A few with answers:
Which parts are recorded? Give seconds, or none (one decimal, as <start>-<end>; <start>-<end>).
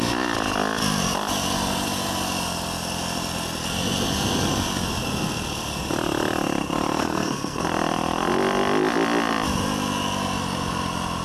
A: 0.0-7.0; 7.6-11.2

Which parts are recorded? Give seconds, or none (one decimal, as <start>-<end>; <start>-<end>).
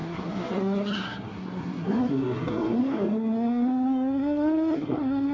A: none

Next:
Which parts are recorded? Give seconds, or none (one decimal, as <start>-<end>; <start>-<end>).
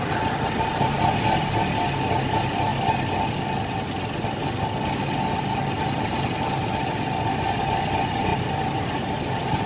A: 0.0-9.7